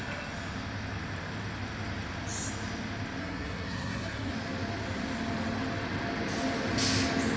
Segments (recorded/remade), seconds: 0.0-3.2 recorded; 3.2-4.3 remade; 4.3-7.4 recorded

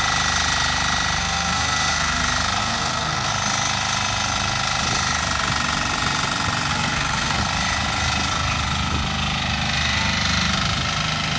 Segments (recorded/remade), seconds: 0.0-1.2 recorded; 1.2-2.2 remade; 2.2-2.6 recorded; 2.6-3.3 remade; 3.3-6.7 recorded; 6.7-7.4 remade; 7.4-11.4 recorded

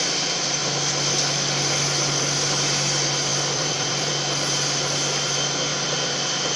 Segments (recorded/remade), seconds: 0.0-3.3 recorded; 3.3-4.1 remade; 4.1-6.6 recorded